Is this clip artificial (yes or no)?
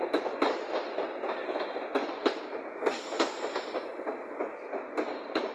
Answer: no